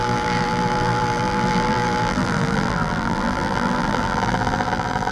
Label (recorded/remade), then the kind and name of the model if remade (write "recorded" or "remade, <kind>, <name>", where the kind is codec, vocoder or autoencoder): remade, vocoder, BigVGAN v2